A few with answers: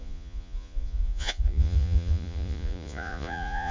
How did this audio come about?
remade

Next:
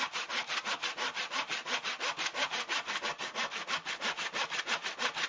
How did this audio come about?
recorded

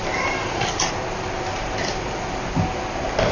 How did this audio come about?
recorded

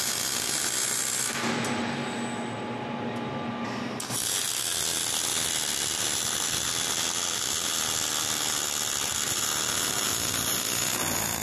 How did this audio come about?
recorded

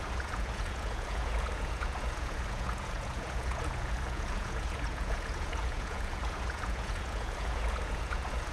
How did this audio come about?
remade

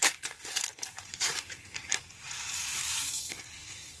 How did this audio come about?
remade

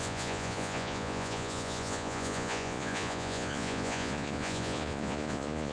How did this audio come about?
remade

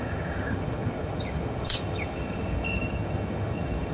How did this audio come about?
remade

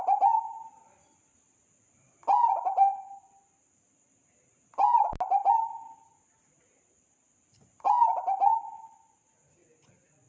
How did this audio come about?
recorded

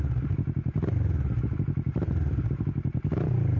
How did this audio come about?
recorded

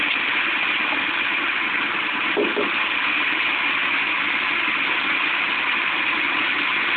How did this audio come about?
recorded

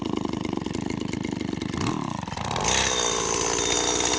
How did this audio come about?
recorded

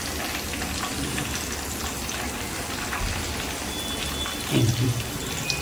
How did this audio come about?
recorded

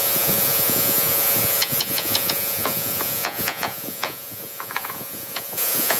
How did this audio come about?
remade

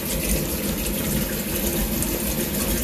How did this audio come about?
recorded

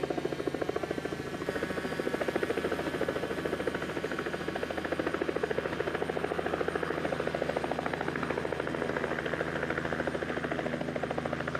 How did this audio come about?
recorded